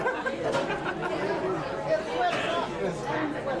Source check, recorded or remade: recorded